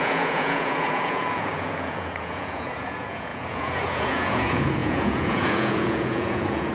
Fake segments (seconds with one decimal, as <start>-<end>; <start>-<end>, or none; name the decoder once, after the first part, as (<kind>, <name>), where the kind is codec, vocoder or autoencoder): 0.0-6.7 (vocoder, Vocos)